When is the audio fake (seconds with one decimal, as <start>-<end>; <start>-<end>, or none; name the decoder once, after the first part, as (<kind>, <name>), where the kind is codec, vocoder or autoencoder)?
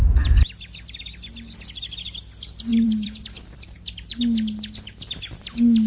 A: 2.7-4.2 (vocoder, BigVGAN v2)